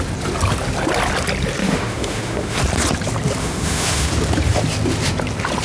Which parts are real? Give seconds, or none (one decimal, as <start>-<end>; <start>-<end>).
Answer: 0.0-1.6; 2.6-3.4; 4.1-5.6